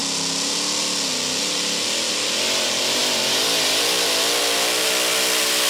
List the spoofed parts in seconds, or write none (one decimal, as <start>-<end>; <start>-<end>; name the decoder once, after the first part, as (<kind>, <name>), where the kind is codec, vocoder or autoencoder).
none